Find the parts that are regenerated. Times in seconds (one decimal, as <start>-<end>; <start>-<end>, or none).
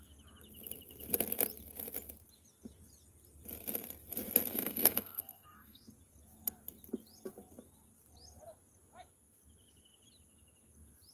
4.5-5.9